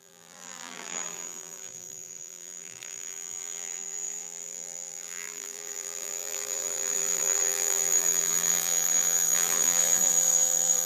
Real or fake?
fake